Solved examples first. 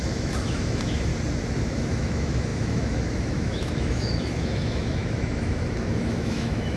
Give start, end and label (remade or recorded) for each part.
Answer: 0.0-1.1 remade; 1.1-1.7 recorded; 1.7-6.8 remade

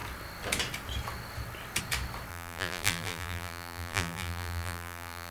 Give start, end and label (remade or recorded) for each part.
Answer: 0.0-2.3 recorded; 2.3-5.3 remade

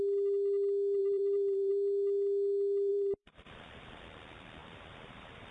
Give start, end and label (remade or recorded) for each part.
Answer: 0.0-1.0 recorded; 1.0-1.7 remade; 1.7-2.9 recorded; 2.9-4.0 remade; 4.0-4.6 recorded; 4.6-5.5 remade

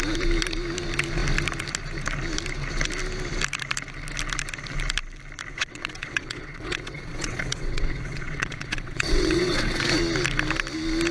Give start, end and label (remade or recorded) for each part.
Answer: 0.0-5.5 recorded; 5.5-9.8 remade; 9.8-11.1 recorded

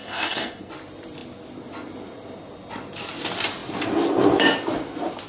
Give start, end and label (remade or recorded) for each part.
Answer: 0.0-0.7 remade; 0.7-5.3 recorded

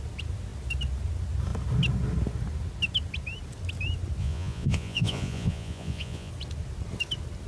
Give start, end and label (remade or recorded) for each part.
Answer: 0.0-4.2 recorded; 4.2-6.3 remade; 6.3-7.5 recorded